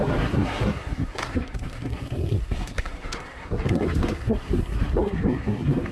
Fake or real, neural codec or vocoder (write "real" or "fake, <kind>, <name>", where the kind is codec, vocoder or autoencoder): fake, codec, SNAC